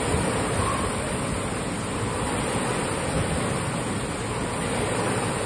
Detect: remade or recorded recorded